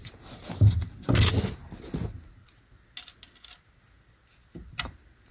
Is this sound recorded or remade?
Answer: recorded